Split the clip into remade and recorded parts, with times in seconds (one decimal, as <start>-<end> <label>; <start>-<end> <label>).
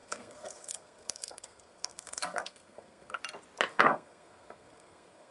0.0-3.2 remade; 3.2-3.7 recorded; 3.7-5.3 remade